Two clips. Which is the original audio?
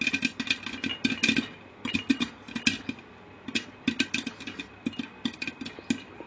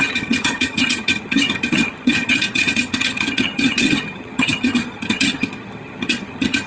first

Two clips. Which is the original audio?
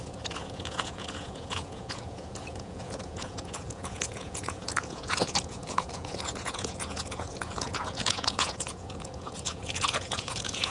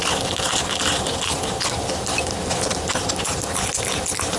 second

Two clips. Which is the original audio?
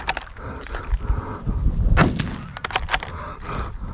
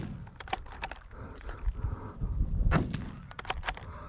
first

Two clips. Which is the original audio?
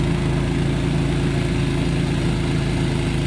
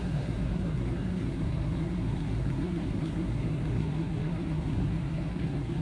first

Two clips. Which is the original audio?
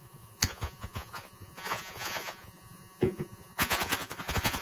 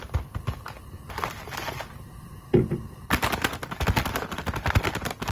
second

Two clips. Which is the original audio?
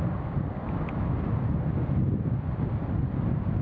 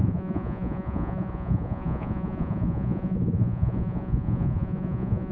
first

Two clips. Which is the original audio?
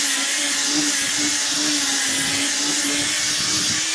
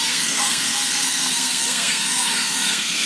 first